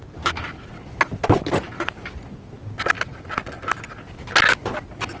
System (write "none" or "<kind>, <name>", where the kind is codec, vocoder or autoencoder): none